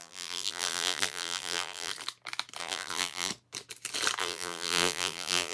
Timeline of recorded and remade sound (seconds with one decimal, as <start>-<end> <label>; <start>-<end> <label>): 0.0-1.9 remade; 1.9-2.6 recorded; 2.6-3.3 remade; 3.3-4.2 recorded; 4.2-5.5 remade